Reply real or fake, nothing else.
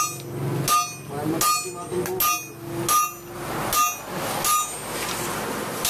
real